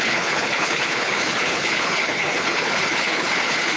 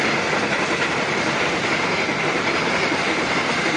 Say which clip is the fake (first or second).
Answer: first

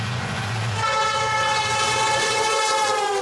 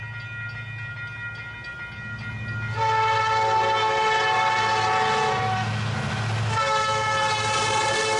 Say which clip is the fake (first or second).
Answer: first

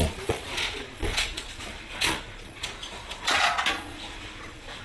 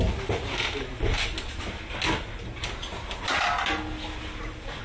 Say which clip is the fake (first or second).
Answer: first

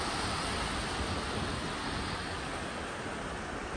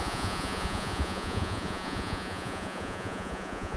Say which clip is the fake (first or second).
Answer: second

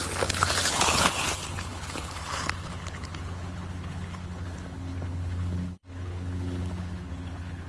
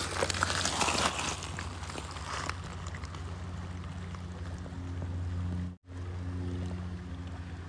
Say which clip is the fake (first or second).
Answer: first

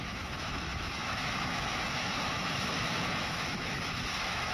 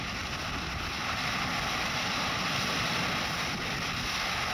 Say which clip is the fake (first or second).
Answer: first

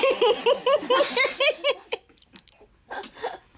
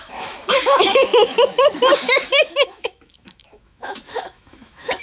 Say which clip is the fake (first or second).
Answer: second